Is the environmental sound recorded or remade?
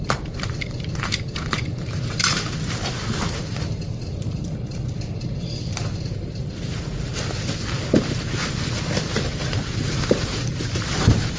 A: remade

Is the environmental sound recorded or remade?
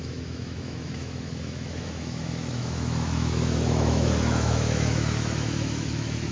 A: remade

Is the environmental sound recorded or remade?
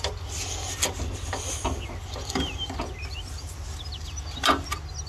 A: recorded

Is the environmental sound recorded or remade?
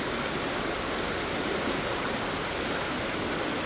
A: recorded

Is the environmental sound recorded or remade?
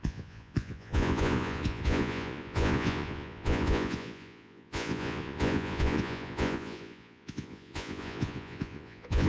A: remade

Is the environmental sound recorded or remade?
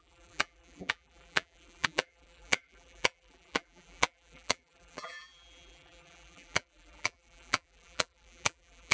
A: remade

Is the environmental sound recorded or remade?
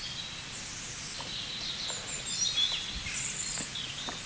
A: recorded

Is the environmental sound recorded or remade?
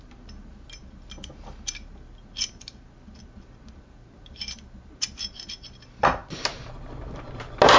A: recorded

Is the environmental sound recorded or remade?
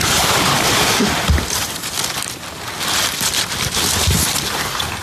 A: remade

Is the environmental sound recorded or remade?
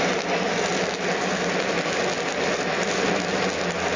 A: recorded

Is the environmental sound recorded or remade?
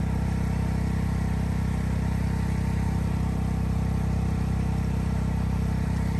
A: remade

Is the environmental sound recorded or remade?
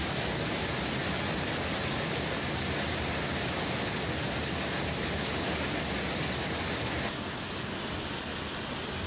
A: recorded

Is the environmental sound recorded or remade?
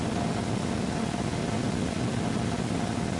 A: recorded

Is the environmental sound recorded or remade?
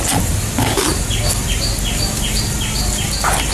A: recorded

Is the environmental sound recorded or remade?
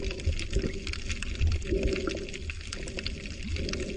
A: recorded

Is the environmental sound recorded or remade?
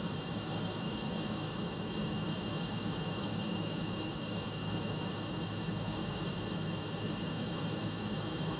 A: remade